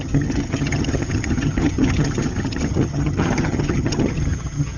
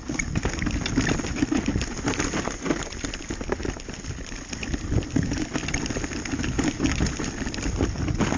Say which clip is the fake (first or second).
first